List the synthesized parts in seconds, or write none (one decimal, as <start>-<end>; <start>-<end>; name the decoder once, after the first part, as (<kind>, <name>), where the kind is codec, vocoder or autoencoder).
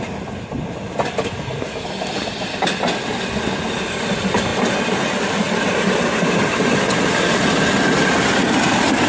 none